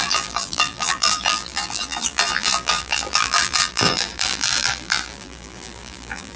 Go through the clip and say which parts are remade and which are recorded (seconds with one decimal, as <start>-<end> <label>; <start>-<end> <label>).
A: 0.0-6.4 remade